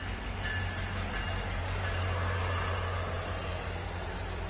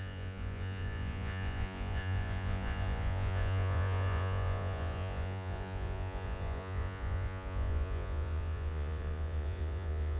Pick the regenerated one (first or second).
second